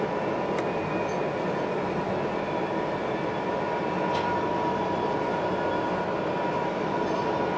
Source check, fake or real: real